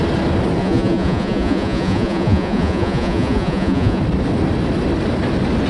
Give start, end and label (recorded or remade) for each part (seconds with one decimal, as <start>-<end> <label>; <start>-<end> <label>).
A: 0.0-0.6 recorded; 0.6-4.0 remade; 4.0-5.7 recorded